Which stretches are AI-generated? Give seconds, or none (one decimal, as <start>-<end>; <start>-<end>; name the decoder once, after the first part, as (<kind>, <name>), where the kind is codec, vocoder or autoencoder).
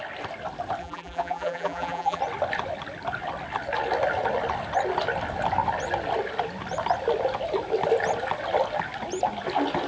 0.8-2.2 (vocoder, BigVGAN v2)